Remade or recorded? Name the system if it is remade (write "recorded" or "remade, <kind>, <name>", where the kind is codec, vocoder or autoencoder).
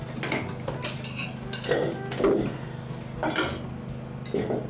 recorded